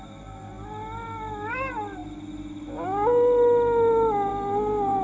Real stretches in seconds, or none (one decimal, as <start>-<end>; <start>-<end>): 0.0-5.0